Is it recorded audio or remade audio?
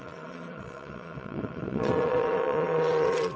remade